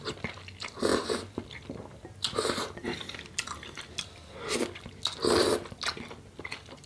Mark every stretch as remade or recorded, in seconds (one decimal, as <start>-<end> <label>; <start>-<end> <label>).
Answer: 0.0-6.9 recorded